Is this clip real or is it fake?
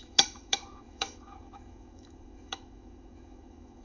fake